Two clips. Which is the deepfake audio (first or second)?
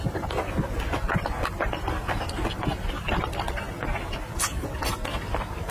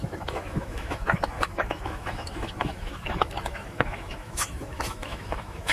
second